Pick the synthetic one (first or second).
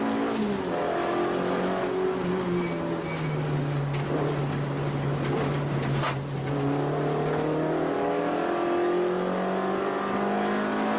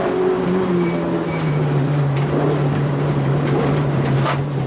second